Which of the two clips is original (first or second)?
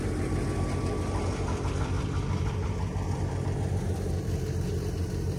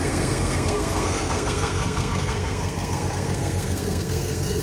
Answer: first